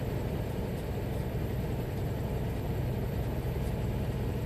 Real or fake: fake